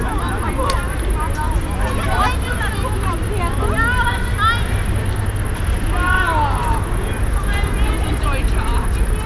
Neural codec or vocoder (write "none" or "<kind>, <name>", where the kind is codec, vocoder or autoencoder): none